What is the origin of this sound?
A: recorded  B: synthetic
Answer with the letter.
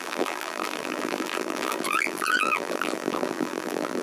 B